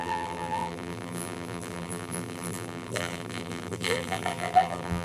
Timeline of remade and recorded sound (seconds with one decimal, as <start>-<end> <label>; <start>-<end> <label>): 0.0-5.0 remade

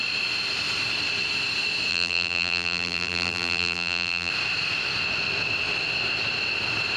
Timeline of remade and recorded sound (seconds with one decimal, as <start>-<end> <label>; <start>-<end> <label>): 0.0-1.9 recorded; 1.9-4.3 remade; 4.3-7.0 recorded

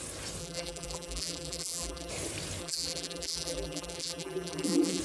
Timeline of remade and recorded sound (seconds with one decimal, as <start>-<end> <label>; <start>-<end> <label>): 0.0-0.4 recorded; 0.4-2.1 remade; 2.1-2.6 recorded; 2.6-5.0 remade

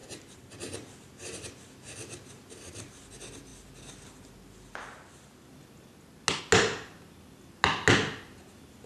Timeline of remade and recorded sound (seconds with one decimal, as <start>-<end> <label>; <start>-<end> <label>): 0.0-3.0 remade; 3.0-8.9 recorded

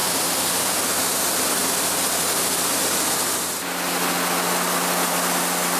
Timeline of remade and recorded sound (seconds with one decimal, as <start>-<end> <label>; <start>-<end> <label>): 0.0-0.8 remade; 0.8-5.8 recorded

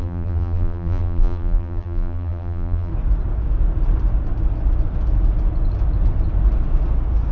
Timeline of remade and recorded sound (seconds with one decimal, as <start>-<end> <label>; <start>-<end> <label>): 0.0-2.9 remade; 2.9-7.3 recorded

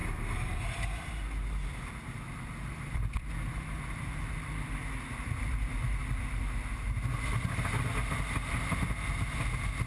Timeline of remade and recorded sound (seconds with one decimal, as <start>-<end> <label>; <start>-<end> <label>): 0.0-1.1 remade; 1.1-2.7 recorded; 2.7-6.0 remade; 6.0-9.9 recorded

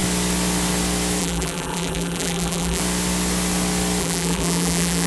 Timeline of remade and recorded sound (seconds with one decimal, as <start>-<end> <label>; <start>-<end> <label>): 0.0-1.2 recorded; 1.2-2.8 remade; 2.8-4.0 recorded; 4.0-5.1 remade